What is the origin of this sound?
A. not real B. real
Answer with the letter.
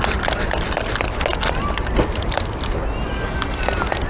B